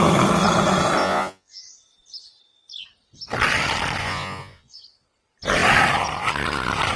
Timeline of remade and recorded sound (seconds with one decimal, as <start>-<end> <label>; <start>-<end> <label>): 0.0-1.0 recorded; 1.0-1.6 remade; 1.6-4.0 recorded; 4.0-4.8 remade; 4.8-7.0 recorded